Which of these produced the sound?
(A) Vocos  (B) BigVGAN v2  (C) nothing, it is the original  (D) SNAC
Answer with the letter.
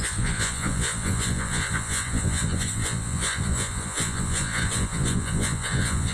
A